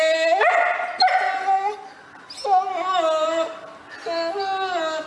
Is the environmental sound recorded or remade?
recorded